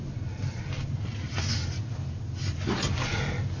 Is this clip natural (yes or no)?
yes